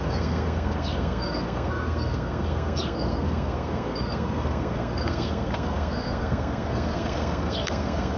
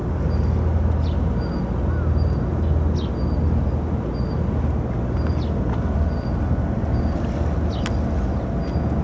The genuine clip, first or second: second